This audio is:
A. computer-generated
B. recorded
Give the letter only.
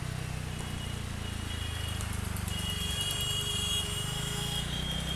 B